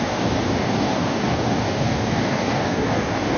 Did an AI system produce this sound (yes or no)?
yes